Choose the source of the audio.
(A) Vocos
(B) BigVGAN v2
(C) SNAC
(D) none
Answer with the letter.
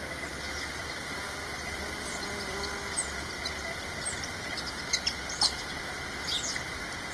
D